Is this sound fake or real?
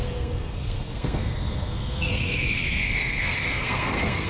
fake